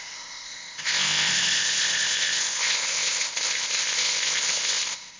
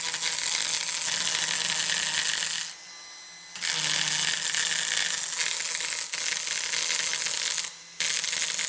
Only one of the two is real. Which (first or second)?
second